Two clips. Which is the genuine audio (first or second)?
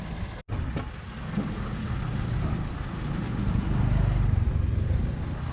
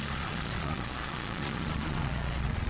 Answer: first